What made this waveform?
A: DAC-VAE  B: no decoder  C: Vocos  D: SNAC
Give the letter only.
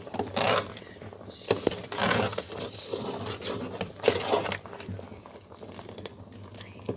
B